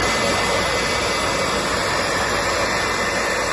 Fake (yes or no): no